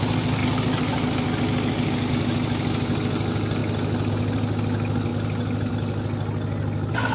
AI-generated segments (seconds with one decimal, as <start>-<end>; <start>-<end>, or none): none